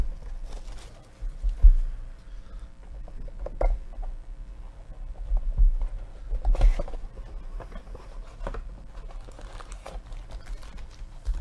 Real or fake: real